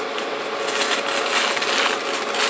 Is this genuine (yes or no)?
yes